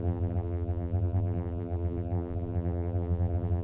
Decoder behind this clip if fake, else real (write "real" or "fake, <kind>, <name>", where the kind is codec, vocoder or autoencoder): fake, vocoder, BigVGAN v2